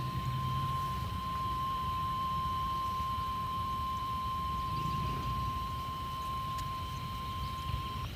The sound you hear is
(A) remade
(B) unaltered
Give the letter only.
A